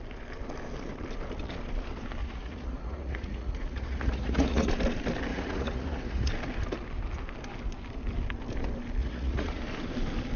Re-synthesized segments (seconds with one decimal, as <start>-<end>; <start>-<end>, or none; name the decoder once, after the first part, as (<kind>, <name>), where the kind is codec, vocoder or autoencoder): 2.2-4.7 (vocoder, Vocos); 5.3-6.3; 9.0-9.6